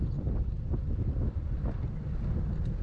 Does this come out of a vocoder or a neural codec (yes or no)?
no